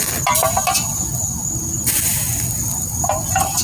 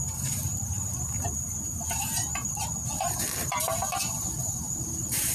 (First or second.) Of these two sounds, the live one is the first